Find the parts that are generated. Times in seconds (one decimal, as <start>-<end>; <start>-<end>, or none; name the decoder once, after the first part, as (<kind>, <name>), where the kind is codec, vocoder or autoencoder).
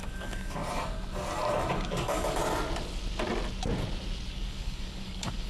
0.0-0.6 (codec, DAC); 1.7-2.4; 4.3-5.5